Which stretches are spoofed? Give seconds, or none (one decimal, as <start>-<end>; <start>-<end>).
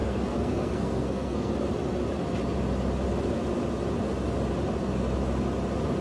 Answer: 0.0-1.5